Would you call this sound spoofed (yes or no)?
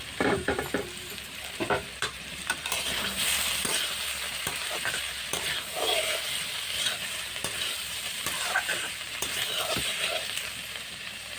yes